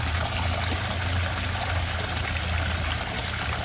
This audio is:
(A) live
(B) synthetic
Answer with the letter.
A